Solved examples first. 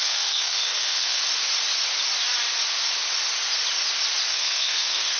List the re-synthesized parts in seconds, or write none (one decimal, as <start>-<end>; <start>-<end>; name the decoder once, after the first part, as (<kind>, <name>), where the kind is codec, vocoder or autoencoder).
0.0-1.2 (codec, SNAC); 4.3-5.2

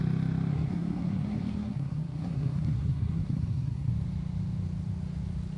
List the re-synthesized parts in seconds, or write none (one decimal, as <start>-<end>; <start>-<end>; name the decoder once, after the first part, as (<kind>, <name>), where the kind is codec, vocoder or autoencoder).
0.5-3.9 (codec, SNAC)

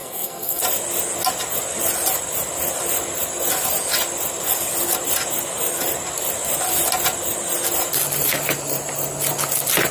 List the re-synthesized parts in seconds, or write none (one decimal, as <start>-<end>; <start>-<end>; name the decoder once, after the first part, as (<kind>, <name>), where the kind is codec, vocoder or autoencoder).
0.0-0.6 (codec, SNAC)

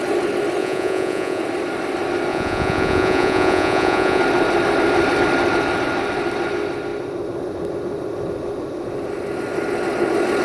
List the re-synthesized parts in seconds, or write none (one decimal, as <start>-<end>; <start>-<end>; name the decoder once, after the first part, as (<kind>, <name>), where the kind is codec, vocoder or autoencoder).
0.6-1.4 (vocoder, Vocos); 2.3-4.2